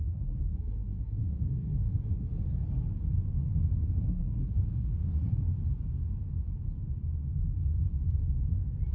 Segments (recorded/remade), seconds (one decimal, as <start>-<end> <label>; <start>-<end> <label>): 0.0-2.3 remade; 2.3-3.8 recorded; 3.8-5.5 remade; 5.5-8.9 recorded